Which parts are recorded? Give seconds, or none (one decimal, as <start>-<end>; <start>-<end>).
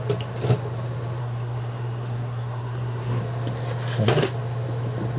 0.0-1.2; 3.2-5.2